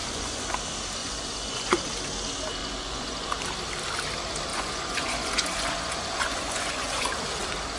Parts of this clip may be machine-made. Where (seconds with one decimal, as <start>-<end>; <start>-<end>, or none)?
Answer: 0.0-0.6; 1.0-1.8; 2.6-3.4; 4.5-7.1